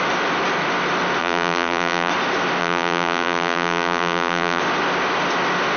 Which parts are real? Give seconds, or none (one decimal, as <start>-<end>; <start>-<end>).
0.0-1.2; 2.1-2.6; 4.6-5.8